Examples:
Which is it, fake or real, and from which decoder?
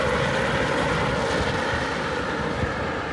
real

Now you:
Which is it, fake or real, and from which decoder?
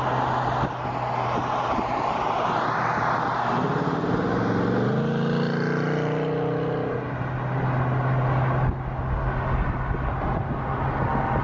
real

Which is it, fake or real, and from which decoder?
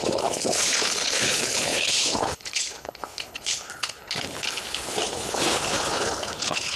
fake, codec, HILCodec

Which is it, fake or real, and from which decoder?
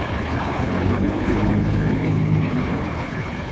fake, codec, HILCodec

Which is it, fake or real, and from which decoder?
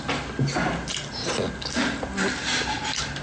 real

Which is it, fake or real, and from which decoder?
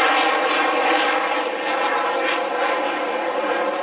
real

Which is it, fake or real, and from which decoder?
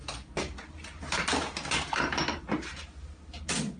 real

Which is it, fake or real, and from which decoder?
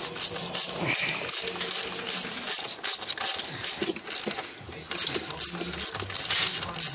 real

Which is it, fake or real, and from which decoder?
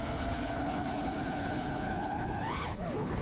fake, codec, HILCodec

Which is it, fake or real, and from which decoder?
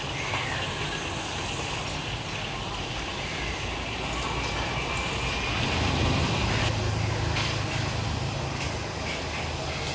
real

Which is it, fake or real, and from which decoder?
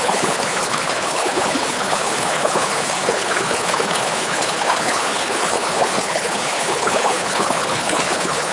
fake, codec, HILCodec